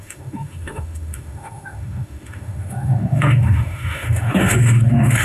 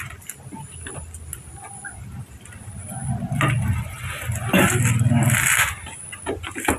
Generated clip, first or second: first